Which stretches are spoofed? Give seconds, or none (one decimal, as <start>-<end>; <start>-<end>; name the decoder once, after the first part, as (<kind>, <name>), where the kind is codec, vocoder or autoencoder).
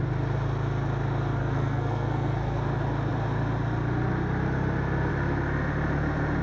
1.4-2.6 (codec, SNAC)